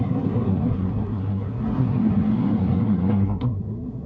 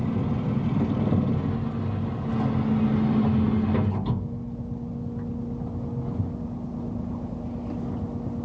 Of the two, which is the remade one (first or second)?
first